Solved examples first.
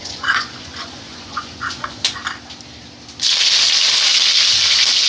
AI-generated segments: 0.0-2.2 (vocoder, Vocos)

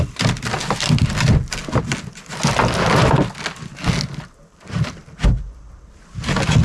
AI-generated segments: 5.0-5.8 (vocoder, BigVGAN v2)

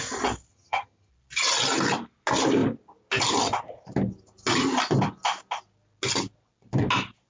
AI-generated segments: 0.5-1.1 (vocoder, HiFi-GAN)

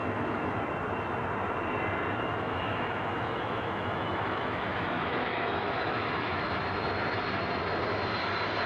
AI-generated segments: 0.0-0.6 (autoencoder, DAC-VAE); 2.3-6.6

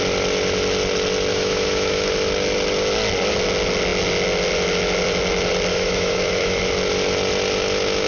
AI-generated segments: 1.3-2.1 (autoencoder, DAC-VAE); 5.7-6.6